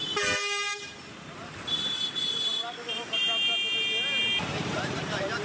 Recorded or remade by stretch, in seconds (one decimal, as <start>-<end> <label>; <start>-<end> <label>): 0.0-3.2 remade; 3.2-4.2 recorded; 4.2-5.4 remade